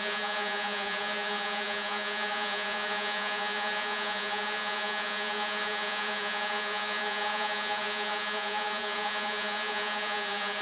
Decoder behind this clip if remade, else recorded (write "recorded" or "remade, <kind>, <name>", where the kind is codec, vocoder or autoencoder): remade, vocoder, Vocos